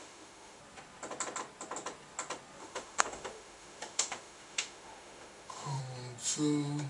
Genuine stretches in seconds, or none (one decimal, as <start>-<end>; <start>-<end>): 0.6-2.6; 5.8-6.9